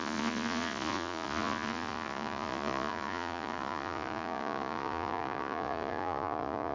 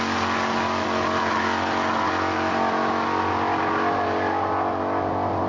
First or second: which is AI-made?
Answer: first